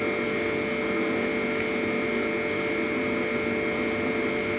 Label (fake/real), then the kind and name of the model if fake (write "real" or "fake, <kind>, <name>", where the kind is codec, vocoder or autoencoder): real